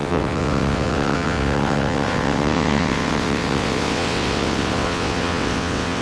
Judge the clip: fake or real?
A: fake